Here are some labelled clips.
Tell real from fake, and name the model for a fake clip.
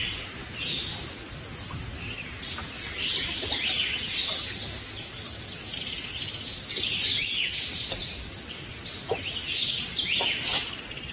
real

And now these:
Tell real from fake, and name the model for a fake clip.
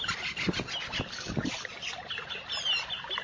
real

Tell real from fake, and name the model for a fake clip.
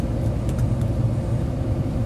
real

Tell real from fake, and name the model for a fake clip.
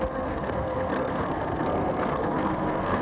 fake, codec, SNAC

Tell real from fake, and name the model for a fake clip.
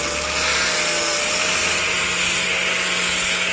real